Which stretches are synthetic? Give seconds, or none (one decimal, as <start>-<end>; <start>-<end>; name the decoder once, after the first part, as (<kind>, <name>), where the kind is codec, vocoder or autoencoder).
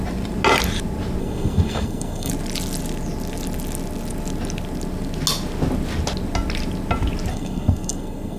1.2-2.3 (codec, SNAC); 7.3-8.4